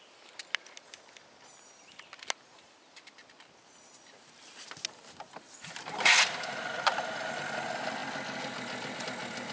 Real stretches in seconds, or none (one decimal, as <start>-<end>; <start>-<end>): 0.0-9.5